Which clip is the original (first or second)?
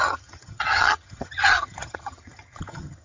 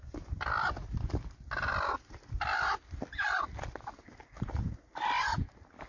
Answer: second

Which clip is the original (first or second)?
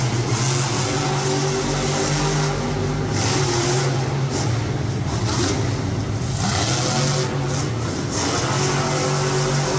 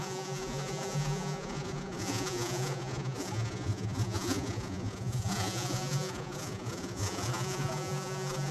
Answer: first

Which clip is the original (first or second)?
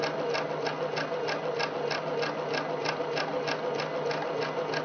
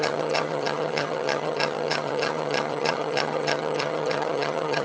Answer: first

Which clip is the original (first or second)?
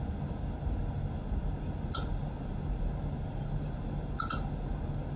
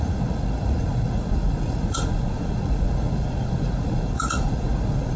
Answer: first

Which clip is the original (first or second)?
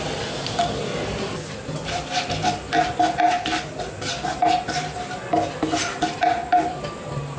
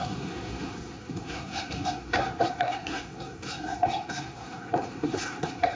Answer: first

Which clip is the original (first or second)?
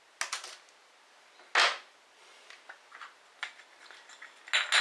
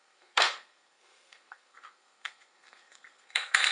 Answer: first